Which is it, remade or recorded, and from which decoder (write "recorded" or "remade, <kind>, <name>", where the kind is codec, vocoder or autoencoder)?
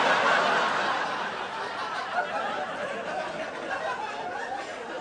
recorded